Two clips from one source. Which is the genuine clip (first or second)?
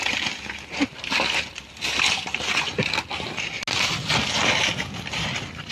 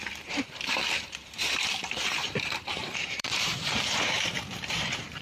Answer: first